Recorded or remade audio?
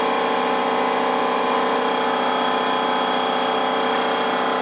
recorded